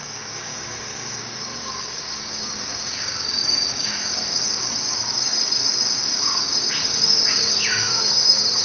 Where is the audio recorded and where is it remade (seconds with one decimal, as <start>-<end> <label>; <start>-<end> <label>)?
0.0-8.6 remade